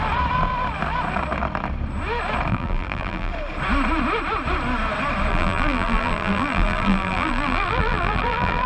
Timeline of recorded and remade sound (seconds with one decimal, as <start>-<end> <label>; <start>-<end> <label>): 0.0-2.5 recorded; 2.5-3.3 remade; 3.3-5.3 recorded; 5.3-8.7 remade